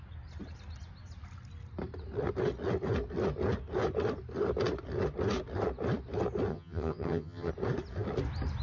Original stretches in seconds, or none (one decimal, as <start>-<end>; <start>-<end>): 0.0-6.5; 7.5-8.6